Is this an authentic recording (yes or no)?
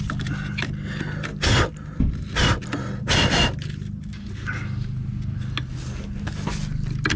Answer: yes